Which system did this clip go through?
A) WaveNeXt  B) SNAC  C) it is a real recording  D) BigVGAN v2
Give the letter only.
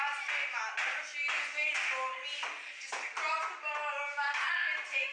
C